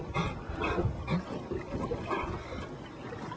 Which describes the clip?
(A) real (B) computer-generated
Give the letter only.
A